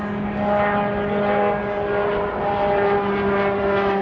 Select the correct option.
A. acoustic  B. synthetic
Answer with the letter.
A